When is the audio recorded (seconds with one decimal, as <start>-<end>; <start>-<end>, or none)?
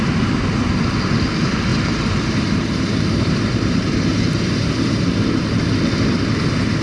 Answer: 0.0-1.7; 5.8-6.8